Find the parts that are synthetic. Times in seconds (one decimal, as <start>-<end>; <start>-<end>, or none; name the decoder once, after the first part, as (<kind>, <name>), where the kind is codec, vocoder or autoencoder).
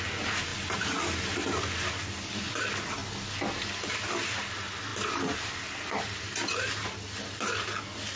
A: none